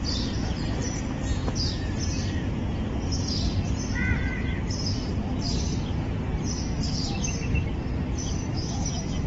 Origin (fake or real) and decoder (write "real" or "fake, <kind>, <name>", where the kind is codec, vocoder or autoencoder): real